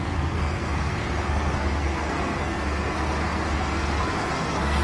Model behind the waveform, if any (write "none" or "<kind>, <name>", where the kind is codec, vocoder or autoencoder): codec, SNAC